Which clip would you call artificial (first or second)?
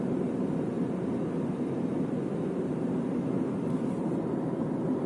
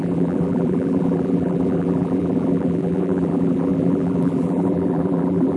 second